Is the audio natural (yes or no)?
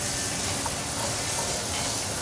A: yes